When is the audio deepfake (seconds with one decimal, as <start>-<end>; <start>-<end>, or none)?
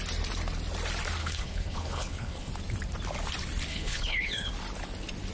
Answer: 1.2-2.5; 3.7-4.5